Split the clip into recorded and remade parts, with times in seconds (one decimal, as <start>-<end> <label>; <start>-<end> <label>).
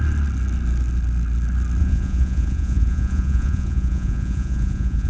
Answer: 0.0-1.8 recorded; 1.8-5.1 remade